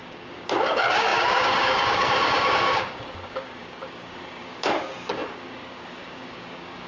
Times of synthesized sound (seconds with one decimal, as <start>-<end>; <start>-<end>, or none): 0.0-6.9